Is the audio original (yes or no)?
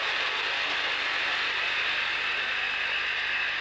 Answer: yes